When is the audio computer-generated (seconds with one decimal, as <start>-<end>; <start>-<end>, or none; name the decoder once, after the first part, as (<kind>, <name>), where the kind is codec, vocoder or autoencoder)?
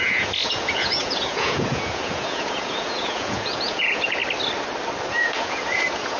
0.0-4.2 (vocoder, Vocos); 5.1-6.2